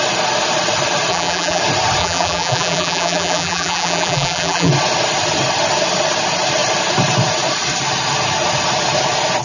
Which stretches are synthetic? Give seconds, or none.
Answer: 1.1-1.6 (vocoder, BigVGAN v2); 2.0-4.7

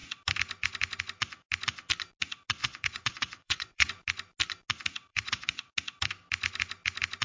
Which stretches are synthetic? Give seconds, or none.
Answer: 2.6-3.9 (vocoder, WaveNeXt); 5.1-5.7